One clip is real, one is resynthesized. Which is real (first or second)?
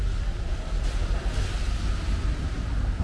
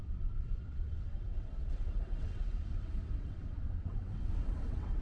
first